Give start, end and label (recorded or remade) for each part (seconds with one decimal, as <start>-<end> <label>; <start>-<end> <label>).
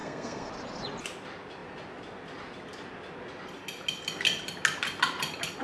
0.0-0.5 remade; 0.5-5.6 recorded